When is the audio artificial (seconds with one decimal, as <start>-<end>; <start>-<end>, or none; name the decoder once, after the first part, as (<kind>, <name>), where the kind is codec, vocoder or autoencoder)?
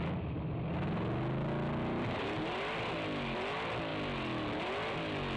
none